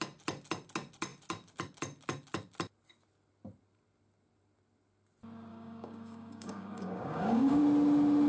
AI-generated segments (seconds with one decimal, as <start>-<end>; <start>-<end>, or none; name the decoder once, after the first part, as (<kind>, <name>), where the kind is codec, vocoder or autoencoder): 5.5-7.6 (codec, DAC)